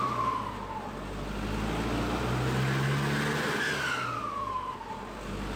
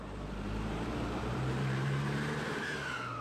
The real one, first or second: first